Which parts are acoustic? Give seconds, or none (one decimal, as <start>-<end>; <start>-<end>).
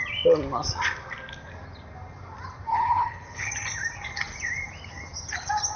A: 0.0-2.7; 3.5-5.8